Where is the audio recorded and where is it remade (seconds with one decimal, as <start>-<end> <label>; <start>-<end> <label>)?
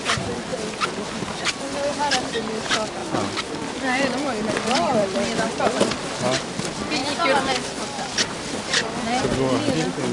0.0-0.5 recorded; 0.5-1.0 remade; 1.0-1.9 recorded; 1.9-2.4 remade; 2.4-3.0 recorded; 3.0-5.8 remade; 5.8-10.1 recorded